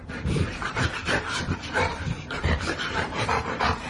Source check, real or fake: fake